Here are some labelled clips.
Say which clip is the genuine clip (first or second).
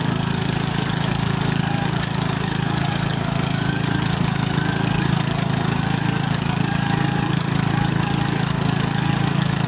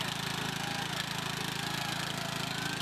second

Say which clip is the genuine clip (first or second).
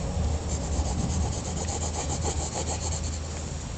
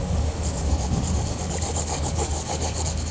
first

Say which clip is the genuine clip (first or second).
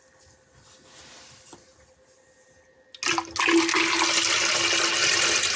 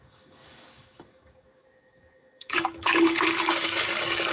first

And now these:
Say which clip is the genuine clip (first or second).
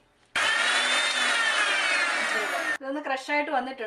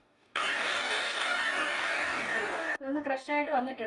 first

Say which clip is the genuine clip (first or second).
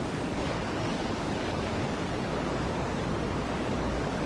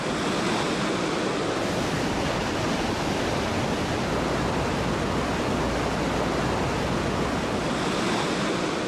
second